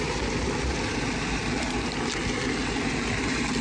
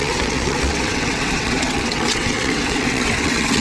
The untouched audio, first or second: first